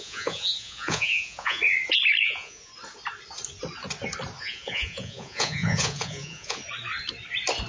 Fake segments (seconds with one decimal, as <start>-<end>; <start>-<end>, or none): 0.0-1.6; 2.2-2.7; 4.4-6.6